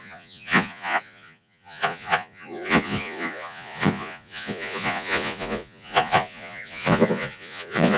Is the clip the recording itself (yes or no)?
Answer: no